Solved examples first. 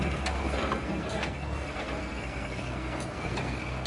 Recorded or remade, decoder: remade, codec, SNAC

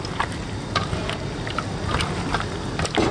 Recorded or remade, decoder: recorded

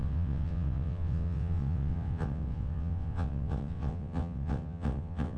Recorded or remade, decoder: remade, vocoder, WaveNeXt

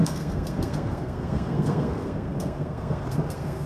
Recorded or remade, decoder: remade, codec, SNAC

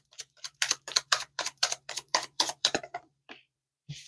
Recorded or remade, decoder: remade, vocoder, BigVGAN v2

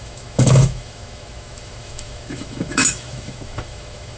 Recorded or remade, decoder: remade, autoencoder, DAC-VAE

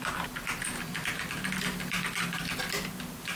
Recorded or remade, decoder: recorded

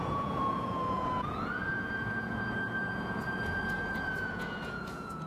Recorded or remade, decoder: remade, vocoder, Vocos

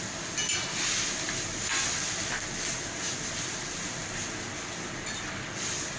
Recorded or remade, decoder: recorded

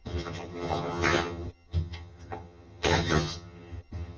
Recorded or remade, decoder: remade, vocoder, HiFi-GAN